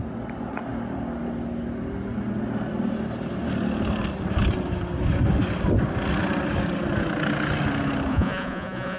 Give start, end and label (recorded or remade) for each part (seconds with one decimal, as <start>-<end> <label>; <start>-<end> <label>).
0.0-8.1 recorded; 8.1-9.0 remade